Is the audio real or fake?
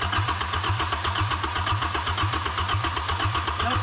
real